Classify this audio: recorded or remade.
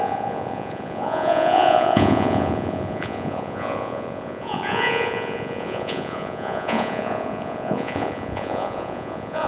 remade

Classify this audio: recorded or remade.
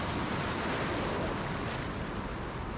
recorded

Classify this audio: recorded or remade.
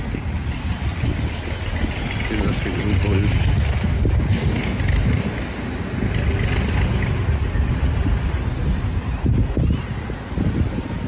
recorded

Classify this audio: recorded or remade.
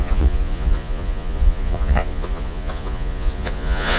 remade